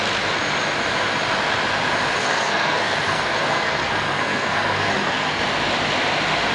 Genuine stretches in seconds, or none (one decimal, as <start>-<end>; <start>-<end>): 0.0-2.2; 5.4-6.5